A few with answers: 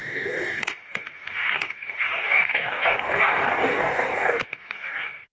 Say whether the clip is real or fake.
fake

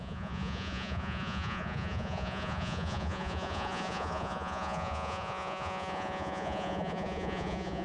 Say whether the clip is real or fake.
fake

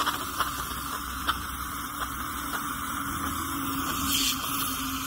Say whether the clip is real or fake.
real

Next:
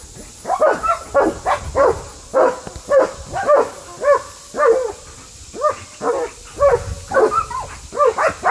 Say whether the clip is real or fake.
real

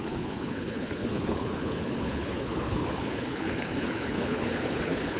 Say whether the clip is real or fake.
fake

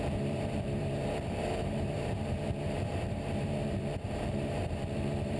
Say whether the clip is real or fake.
fake